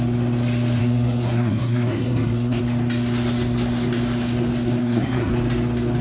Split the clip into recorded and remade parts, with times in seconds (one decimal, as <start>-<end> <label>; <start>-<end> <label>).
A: 0.0-0.8 recorded; 0.8-2.6 remade; 2.6-4.8 recorded; 4.8-5.3 remade; 5.3-6.0 recorded